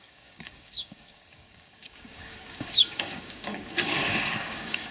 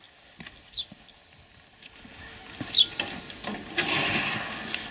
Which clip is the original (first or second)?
second